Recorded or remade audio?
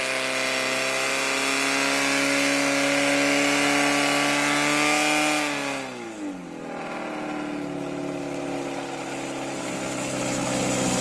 recorded